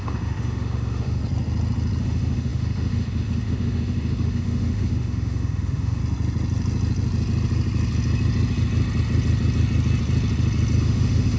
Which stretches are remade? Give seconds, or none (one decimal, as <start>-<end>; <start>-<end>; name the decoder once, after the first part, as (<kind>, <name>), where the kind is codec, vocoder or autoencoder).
0.0-1.2 (autoencoder, DAC-VAE); 2.0-6.0; 10.8-11.4